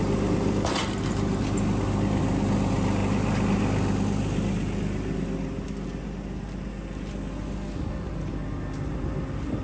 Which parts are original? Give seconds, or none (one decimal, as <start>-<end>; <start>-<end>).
0.0-9.6